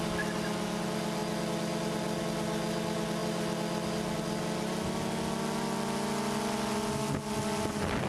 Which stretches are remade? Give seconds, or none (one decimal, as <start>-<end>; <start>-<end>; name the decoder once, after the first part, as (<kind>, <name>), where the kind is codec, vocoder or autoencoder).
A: none